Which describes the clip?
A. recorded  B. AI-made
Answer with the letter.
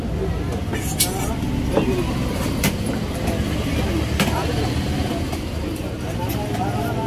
A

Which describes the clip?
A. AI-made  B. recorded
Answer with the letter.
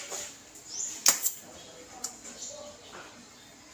B